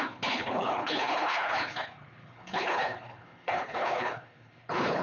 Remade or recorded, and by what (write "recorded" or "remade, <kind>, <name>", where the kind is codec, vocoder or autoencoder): remade, codec, HILCodec